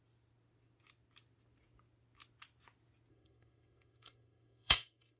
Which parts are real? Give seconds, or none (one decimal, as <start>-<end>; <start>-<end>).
0.0-3.1